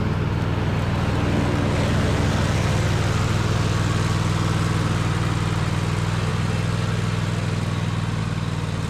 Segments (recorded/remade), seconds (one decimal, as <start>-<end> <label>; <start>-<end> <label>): 0.0-8.9 recorded

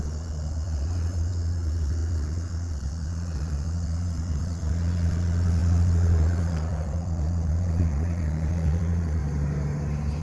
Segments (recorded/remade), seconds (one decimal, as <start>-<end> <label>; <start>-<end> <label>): 0.0-9.2 remade; 9.2-10.2 recorded